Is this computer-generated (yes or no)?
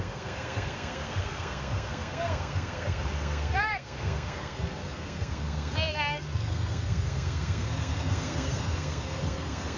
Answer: yes